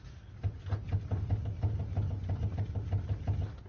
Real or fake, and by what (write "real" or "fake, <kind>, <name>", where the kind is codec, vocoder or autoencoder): real